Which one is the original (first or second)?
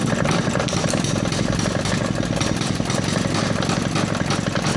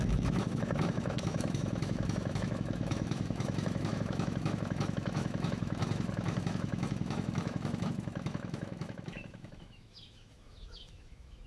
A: first